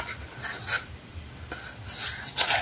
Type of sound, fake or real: real